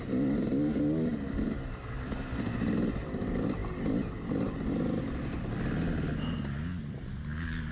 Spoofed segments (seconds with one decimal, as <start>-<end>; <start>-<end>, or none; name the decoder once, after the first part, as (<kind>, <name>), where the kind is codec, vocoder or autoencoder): none